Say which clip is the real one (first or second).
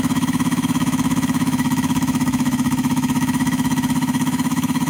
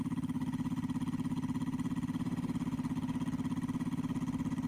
second